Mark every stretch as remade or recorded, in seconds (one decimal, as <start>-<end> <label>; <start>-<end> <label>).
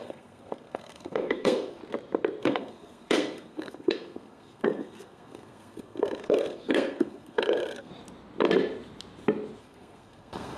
0.0-1.8 remade; 1.8-2.4 recorded; 2.4-7.9 remade; 7.9-9.6 recorded; 9.6-10.6 remade